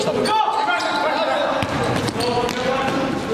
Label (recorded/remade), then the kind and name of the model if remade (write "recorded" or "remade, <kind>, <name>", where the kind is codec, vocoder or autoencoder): recorded